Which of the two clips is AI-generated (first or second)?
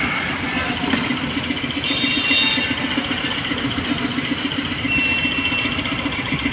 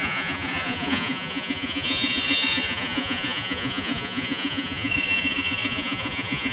second